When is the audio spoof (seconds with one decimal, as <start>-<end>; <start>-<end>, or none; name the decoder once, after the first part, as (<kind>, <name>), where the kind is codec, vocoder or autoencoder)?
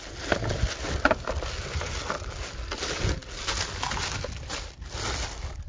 none